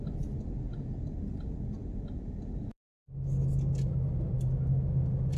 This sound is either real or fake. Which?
real